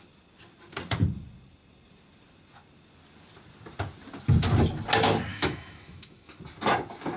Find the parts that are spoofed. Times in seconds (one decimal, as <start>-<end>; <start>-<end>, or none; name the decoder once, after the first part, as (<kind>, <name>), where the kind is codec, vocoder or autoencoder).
5.3-6.4 (autoencoder, DAC-VAE)